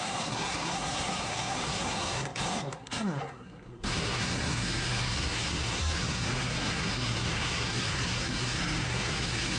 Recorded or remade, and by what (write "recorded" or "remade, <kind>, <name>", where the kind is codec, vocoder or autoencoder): remade, codec, SNAC